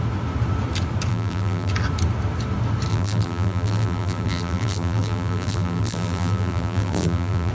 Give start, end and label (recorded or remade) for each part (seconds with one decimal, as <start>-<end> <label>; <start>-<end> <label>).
0.0-1.1 recorded; 1.1-1.7 remade; 1.7-2.9 recorded; 2.9-7.5 remade